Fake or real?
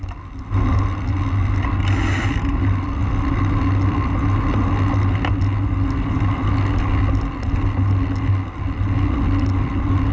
real